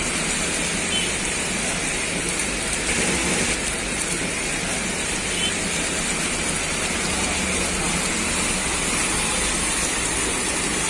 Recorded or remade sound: recorded